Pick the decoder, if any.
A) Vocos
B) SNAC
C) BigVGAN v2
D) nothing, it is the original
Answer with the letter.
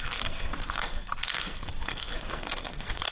B